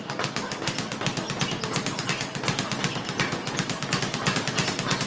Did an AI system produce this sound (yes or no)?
no